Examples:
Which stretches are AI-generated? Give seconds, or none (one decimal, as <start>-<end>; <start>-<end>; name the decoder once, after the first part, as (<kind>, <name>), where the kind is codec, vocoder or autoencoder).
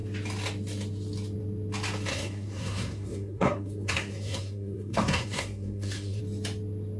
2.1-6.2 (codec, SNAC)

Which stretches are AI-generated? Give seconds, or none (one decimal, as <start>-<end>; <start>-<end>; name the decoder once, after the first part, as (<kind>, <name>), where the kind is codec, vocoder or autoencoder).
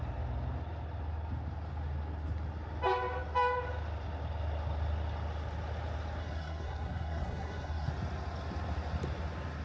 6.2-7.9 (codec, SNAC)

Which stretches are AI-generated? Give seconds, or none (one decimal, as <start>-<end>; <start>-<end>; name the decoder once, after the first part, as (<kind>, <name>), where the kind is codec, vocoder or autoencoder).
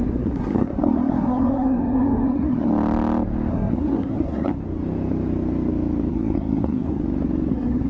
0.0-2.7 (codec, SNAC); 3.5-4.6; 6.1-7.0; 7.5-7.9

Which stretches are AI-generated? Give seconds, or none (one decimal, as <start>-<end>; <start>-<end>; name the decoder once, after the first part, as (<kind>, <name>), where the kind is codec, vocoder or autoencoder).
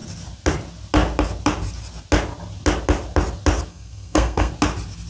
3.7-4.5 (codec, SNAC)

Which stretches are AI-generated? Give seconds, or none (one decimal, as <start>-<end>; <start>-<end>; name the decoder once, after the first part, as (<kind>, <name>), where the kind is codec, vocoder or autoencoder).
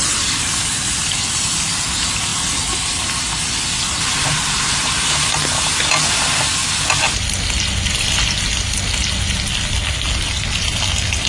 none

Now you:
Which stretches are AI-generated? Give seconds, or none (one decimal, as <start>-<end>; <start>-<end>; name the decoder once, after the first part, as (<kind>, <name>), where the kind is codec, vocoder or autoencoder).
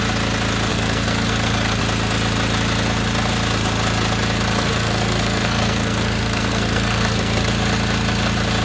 0.7-1.8 (codec, SNAC); 4.5-7.5